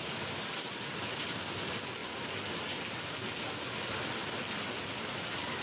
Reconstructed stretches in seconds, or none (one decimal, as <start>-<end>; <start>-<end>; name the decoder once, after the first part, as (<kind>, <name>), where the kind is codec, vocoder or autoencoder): none